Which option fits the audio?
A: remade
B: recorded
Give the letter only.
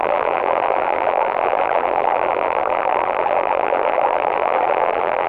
A